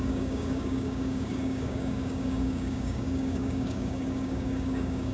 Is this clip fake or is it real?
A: fake